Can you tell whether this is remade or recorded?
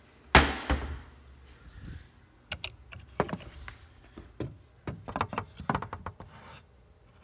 recorded